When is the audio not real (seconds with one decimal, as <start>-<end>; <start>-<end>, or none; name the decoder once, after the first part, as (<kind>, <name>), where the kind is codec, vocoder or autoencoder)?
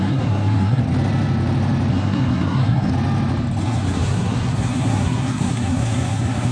0.0-0.8 (codec, SNAC); 1.9-2.9; 3.6-6.5